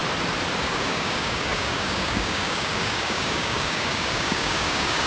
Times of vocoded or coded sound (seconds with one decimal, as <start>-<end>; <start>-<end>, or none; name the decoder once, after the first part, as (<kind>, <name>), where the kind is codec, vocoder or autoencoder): 0.6-5.1 (codec, DAC)